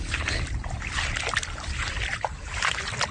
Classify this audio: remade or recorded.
recorded